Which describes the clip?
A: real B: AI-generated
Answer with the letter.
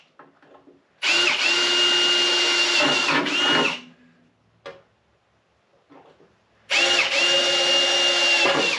A